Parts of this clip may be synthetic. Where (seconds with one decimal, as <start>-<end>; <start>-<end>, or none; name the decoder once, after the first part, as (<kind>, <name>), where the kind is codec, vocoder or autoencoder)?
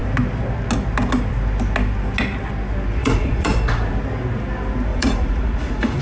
3.0-3.9 (vocoder, Vocos); 4.9-6.0